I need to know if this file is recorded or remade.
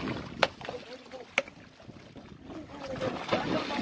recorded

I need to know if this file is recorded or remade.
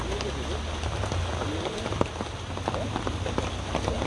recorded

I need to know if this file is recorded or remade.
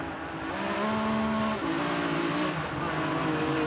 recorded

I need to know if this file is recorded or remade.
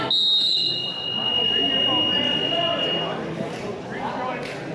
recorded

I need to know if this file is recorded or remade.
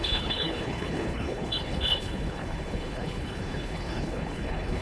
remade